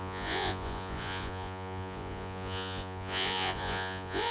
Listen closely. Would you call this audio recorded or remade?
remade